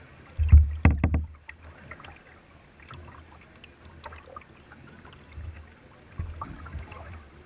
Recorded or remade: recorded